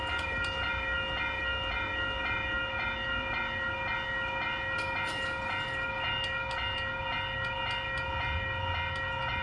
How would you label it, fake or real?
real